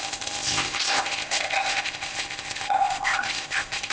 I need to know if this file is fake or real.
fake